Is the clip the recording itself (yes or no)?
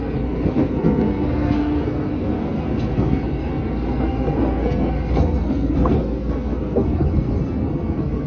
no